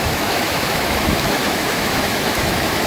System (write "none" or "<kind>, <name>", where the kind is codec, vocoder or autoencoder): autoencoder, DAC-VAE